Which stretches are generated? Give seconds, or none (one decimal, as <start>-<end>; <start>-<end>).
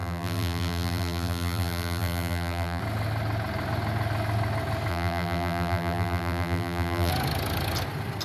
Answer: 0.0-2.8; 4.9-7.1